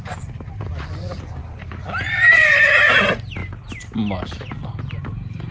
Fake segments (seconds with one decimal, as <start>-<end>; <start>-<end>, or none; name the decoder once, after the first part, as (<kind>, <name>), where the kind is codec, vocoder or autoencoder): 1.4-2.7 (vocoder, BigVGAN v2)